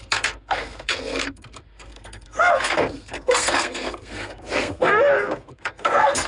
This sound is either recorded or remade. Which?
remade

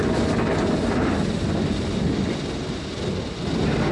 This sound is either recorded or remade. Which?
recorded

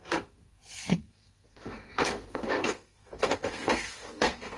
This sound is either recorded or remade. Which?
remade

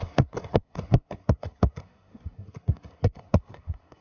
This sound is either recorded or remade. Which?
remade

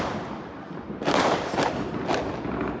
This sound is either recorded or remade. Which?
recorded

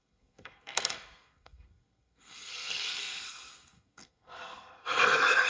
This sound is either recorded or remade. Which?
remade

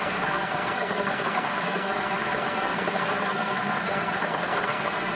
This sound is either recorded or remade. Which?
remade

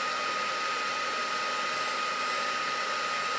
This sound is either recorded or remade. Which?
recorded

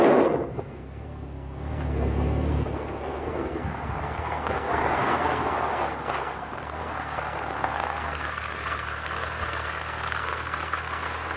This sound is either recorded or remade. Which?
remade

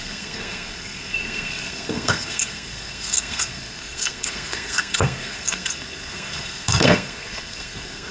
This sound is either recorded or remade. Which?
remade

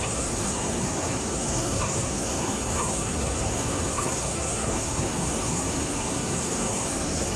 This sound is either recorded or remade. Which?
remade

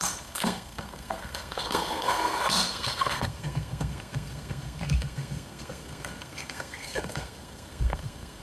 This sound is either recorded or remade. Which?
remade